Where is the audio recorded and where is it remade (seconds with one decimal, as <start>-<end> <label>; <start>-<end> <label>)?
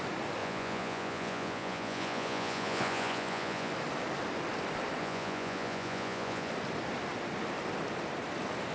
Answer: 0.0-0.4 recorded; 0.4-3.7 remade; 3.7-5.0 recorded; 5.0-6.5 remade; 6.5-8.7 recorded